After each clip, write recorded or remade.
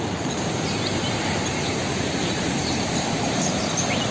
remade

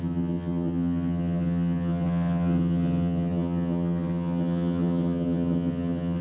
remade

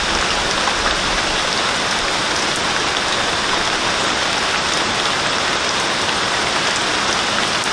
recorded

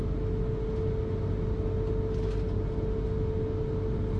recorded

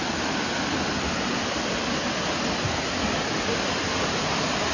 recorded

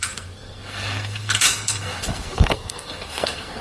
remade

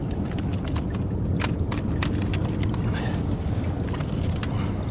recorded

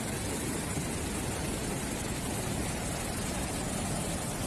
recorded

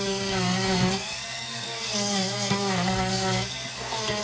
remade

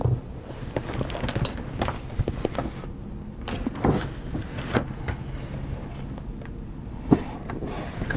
recorded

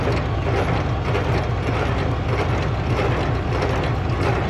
recorded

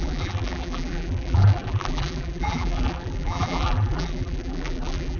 remade